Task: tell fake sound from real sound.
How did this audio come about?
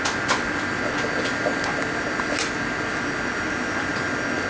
real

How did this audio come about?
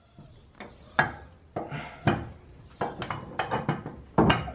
real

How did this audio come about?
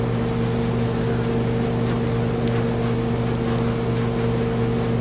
real